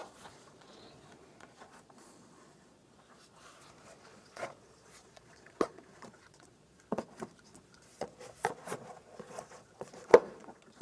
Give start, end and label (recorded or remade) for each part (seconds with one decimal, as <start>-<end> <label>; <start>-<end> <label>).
0.0-10.8 remade

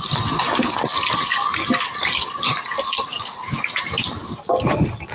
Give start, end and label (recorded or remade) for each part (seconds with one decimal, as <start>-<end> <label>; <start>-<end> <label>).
0.0-5.1 recorded

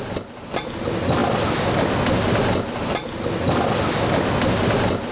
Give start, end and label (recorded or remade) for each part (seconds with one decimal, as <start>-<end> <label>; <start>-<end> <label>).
0.0-5.1 recorded

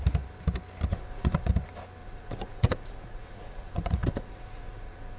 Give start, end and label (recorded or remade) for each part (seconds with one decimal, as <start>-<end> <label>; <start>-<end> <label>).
0.0-0.9 recorded; 0.9-1.5 remade; 1.5-2.0 recorded; 2.0-5.2 remade